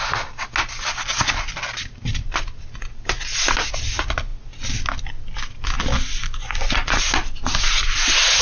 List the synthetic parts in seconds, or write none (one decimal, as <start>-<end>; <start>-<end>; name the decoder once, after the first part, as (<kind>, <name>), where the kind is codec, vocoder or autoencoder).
6.2-7.0 (vocoder, Vocos)